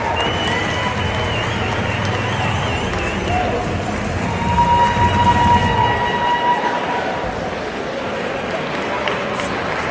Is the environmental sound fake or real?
real